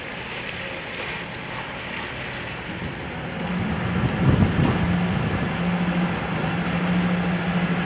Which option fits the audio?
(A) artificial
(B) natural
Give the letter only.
B